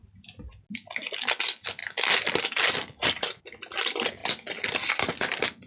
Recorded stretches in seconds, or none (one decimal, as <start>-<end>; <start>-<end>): 0.0-1.3; 4.2-4.9